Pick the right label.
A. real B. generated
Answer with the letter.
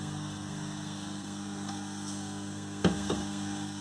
B